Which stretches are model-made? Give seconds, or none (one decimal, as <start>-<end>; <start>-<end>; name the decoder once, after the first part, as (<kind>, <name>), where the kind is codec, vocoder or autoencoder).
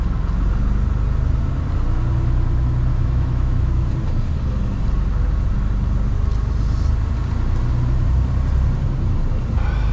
2.9-3.9 (autoencoder, DAC-VAE)